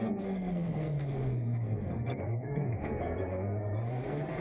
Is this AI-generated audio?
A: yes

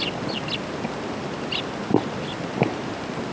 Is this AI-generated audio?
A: no